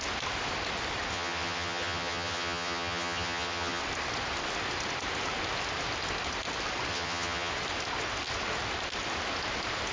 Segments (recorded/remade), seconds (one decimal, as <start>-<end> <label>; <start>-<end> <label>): 0.0-1.1 recorded; 1.1-3.8 remade; 3.8-6.9 recorded; 6.9-7.5 remade; 7.5-9.9 recorded